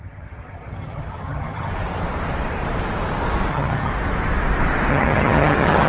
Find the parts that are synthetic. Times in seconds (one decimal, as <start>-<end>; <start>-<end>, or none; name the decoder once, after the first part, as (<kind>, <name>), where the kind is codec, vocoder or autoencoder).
0.0-1.7 (vocoder, HiFi-GAN); 3.5-3.9; 4.9-5.9